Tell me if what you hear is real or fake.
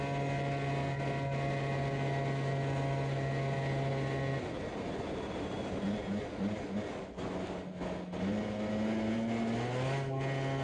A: real